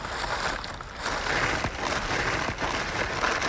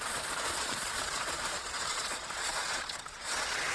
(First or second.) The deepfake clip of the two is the second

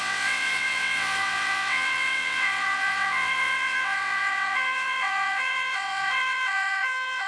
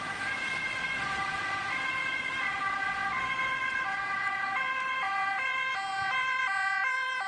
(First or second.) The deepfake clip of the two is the first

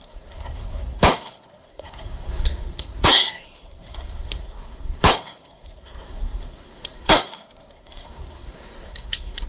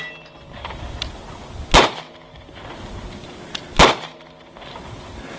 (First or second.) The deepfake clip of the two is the first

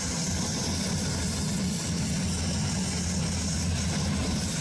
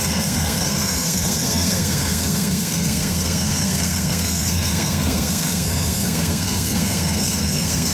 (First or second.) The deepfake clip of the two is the second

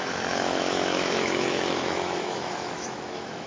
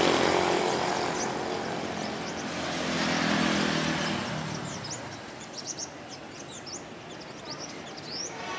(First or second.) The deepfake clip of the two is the first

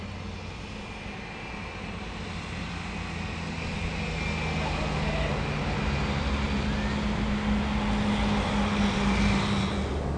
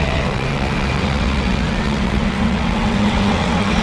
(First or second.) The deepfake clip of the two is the second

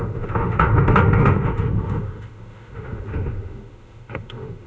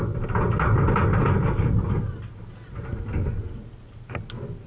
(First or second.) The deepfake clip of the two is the first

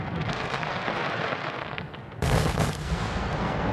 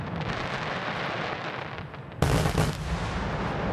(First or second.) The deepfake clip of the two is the first